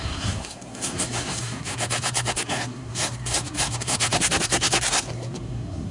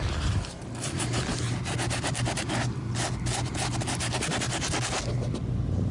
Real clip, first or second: second